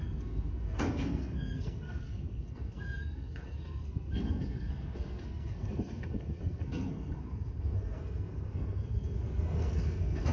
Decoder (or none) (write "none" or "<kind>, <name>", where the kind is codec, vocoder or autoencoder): codec, SNAC